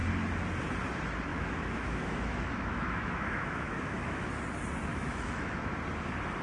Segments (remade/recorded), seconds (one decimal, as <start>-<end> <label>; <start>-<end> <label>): 0.0-1.3 recorded; 1.3-4.3 remade; 4.3-4.9 recorded; 4.9-5.7 remade; 5.7-6.4 recorded